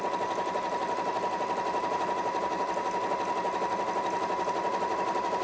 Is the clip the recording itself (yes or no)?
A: yes